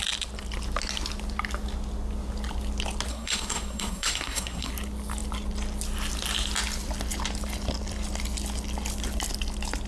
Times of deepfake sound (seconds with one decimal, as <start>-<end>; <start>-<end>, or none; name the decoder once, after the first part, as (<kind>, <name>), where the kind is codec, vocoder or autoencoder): 3.1-4.7 (codec, SNAC)